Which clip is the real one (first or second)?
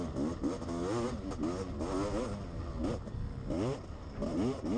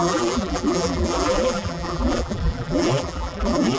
first